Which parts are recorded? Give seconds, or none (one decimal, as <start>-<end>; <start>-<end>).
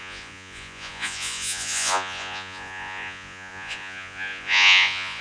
none